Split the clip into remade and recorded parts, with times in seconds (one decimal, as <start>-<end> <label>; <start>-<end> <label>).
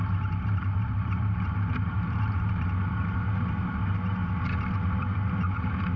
0.0-4.2 remade; 4.2-4.9 recorded; 4.9-6.0 remade